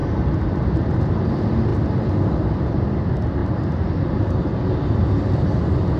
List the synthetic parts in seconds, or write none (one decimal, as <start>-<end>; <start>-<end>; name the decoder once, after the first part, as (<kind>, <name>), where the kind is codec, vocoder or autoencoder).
0.0-1.0 (vocoder, BigVGAN v2)